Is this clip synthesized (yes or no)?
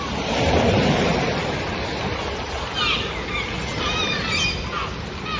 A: no